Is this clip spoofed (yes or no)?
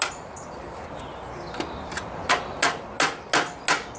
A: no